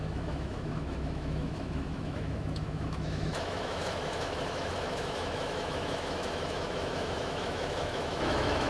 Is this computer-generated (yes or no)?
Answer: yes